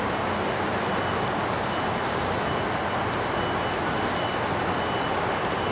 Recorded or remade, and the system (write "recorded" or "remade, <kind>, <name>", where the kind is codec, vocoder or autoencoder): recorded